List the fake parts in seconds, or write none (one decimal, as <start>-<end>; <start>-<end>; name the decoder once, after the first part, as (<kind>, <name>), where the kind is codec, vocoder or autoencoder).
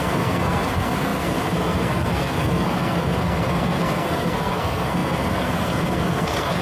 0.0-6.6 (codec, SNAC)